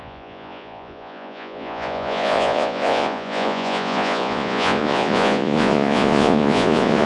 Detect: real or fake fake